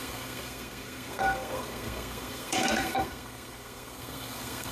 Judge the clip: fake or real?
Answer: fake